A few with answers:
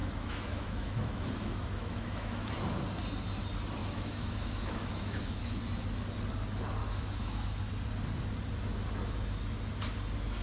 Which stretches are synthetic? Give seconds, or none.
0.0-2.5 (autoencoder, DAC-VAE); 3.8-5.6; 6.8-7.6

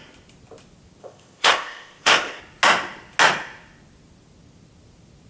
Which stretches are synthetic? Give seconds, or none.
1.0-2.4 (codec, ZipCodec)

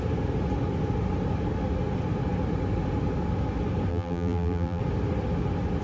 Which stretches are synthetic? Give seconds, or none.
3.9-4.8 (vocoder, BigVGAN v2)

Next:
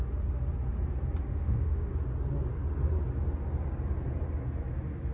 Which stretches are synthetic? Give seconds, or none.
1.3-1.9 (autoencoder, DAC-VAE)

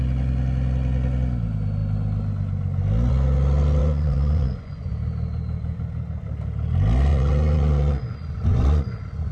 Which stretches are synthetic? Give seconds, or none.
3.8-4.9 (vocoder, Vocos); 7.1-9.3

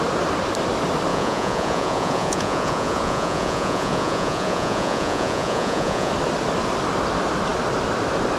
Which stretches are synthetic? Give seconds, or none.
1.1-6.1 (vocoder, Vocos)